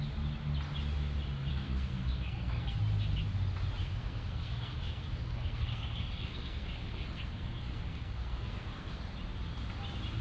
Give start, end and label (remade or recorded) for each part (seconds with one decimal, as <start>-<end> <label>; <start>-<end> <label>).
0.0-1.5 recorded; 1.5-2.8 remade; 2.8-3.8 recorded; 3.8-9.0 remade; 9.0-10.2 recorded